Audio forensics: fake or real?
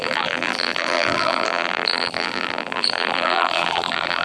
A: fake